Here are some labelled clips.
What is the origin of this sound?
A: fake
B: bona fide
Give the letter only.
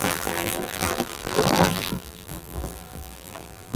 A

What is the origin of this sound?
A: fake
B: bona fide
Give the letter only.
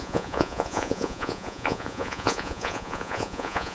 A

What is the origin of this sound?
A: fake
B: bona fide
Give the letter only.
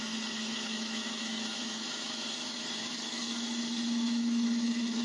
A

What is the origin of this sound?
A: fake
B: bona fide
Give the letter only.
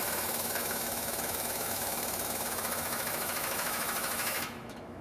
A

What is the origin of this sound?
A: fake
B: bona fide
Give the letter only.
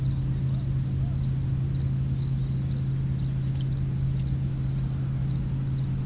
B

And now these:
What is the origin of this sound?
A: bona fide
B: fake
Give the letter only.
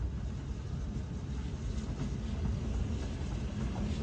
A